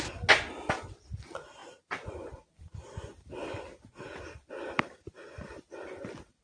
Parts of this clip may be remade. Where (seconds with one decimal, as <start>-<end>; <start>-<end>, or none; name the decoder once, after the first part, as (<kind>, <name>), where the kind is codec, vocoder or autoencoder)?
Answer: none